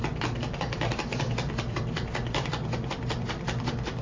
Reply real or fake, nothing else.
fake